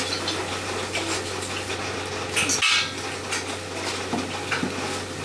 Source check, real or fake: real